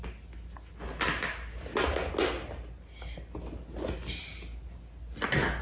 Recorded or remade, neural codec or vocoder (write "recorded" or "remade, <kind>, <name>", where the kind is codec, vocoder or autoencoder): recorded